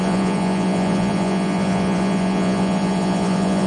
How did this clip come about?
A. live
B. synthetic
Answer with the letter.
B